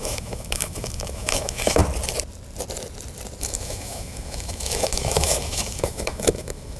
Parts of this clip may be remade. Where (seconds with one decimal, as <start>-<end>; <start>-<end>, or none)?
0.0-1.8; 3.4-6.8